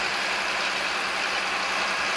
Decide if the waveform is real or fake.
real